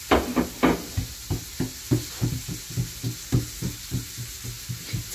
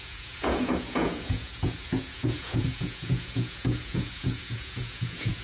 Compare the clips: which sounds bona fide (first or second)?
first